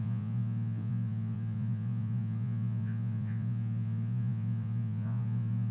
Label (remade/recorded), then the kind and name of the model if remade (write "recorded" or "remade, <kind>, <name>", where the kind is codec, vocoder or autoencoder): remade, vocoder, Vocos